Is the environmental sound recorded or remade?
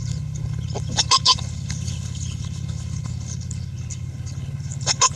remade